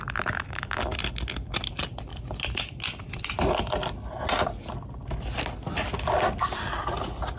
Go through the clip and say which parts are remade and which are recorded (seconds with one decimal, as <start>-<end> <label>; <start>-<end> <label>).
0.0-7.4 recorded